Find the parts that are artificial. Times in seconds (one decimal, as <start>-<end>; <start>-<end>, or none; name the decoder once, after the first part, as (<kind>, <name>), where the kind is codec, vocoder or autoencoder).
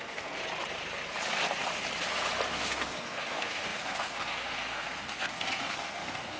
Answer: 0.0-0.4 (codec, SNAC); 2.5-6.4